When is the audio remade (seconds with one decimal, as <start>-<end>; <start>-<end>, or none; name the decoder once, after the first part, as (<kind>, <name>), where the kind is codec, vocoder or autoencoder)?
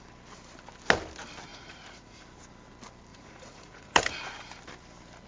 1.5-2.2 (vocoder, Vocos); 3.1-4.0